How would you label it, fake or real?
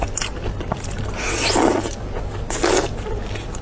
real